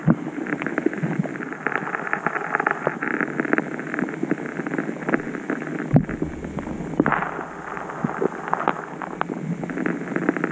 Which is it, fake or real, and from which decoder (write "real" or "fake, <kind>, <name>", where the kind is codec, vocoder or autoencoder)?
real